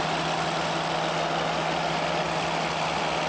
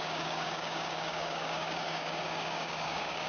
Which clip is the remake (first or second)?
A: second